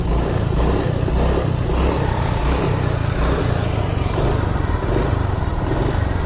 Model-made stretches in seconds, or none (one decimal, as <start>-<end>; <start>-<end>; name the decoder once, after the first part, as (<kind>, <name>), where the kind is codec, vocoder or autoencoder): none

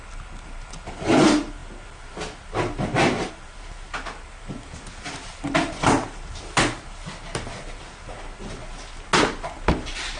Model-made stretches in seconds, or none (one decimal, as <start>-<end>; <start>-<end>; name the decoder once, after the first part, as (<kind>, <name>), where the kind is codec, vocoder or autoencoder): none

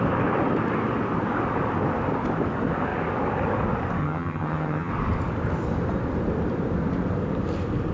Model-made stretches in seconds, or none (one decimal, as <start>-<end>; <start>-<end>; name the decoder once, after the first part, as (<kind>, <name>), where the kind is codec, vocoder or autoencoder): 4.0-4.9 (vocoder, HiFi-GAN)

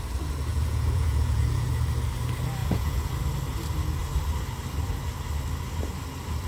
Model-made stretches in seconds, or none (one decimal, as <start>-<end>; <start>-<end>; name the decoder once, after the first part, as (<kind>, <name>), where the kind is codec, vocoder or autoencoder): 0.5-1.7 (vocoder, Vocos); 2.6-3.1